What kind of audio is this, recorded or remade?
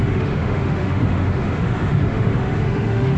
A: remade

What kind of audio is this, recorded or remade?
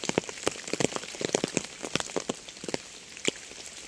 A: recorded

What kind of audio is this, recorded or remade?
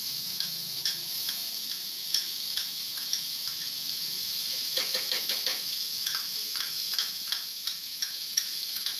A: remade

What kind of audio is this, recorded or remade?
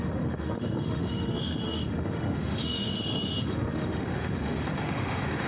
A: remade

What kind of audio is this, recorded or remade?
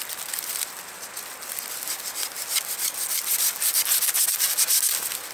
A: recorded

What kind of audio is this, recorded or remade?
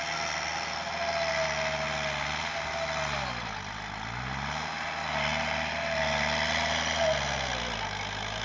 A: recorded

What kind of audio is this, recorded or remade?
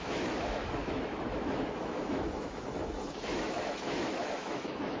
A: remade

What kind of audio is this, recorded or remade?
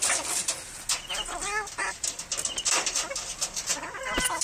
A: recorded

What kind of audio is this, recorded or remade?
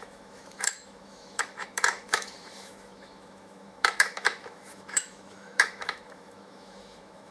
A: remade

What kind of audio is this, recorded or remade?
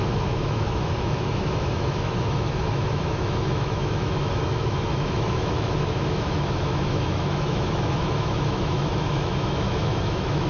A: remade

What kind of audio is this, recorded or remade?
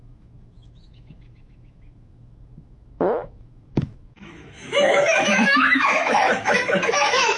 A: remade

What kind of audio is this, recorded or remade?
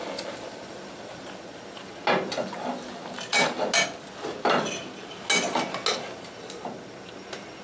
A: recorded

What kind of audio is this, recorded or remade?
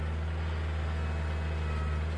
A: recorded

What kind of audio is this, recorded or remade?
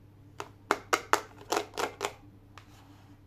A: recorded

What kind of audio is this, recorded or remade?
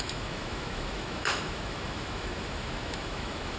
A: remade